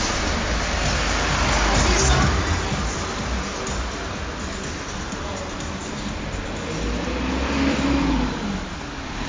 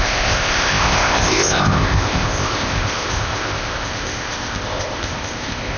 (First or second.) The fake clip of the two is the second